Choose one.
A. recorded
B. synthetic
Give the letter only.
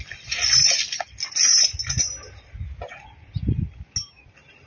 A